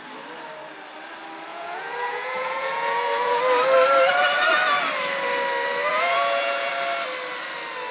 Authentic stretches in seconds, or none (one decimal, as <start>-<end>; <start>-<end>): 0.0-1.5; 3.4-5.9; 6.7-7.9